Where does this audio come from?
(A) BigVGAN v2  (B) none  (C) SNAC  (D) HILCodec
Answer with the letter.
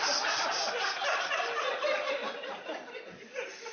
B